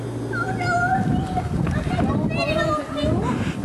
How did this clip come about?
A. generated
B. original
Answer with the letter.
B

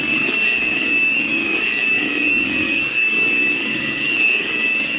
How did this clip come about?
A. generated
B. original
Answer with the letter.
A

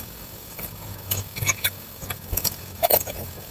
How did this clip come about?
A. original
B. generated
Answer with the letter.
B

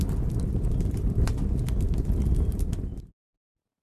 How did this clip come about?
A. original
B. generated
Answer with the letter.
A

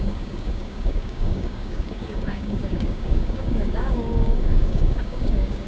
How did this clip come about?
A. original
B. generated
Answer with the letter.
B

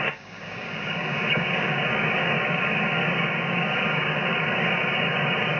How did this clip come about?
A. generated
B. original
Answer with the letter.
A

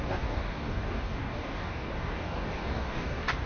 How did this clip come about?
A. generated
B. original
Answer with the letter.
A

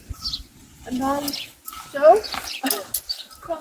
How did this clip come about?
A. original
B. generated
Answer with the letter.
A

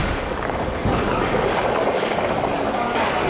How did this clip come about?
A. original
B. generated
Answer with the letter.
B